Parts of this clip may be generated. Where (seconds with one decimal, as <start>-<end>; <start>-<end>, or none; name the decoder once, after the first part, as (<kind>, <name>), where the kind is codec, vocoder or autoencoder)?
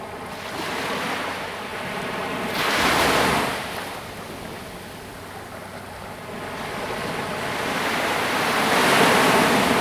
none